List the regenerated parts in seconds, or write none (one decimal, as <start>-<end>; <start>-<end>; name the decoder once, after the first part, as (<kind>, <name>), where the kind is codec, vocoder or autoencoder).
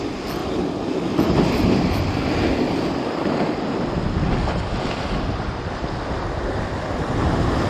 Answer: none